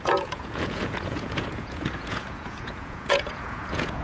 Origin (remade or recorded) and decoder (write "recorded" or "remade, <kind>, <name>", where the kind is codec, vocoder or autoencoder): remade, vocoder, Vocos